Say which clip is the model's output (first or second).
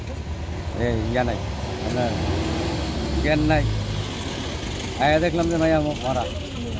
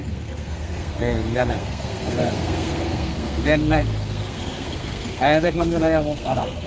second